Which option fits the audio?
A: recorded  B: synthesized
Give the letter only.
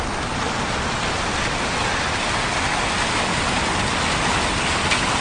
A